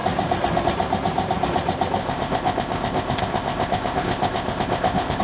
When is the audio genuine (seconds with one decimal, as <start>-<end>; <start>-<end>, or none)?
0.0-2.0